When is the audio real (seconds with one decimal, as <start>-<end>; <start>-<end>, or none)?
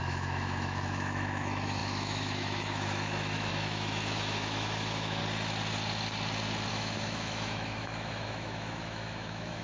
5.2-6.7